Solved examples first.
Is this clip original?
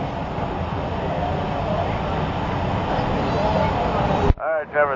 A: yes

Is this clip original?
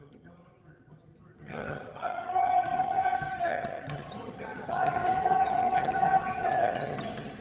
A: no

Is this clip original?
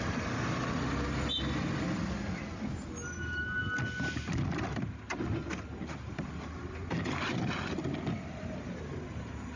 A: yes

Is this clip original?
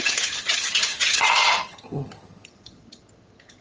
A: no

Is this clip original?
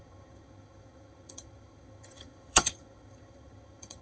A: no